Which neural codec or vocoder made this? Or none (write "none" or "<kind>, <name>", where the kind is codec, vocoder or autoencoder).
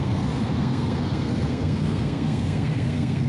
codec, SNAC